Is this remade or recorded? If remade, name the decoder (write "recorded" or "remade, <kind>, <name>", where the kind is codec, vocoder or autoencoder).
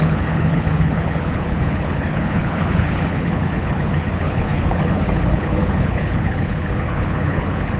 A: remade, codec, HILCodec